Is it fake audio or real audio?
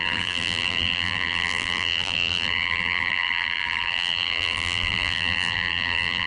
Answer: fake